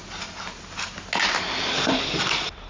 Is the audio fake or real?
real